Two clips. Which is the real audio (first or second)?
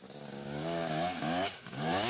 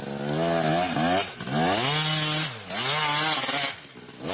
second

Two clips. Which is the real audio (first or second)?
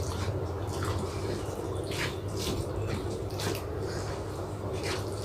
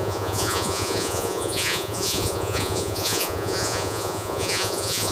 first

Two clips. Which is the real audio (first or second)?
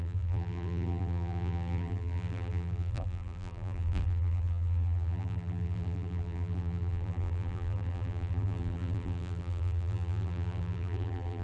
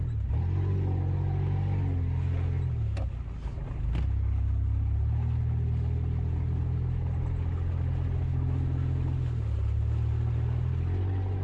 second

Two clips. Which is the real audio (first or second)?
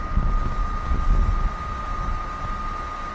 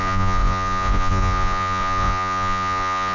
first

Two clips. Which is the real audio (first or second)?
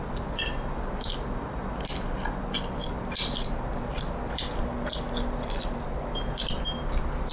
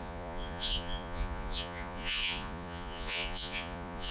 first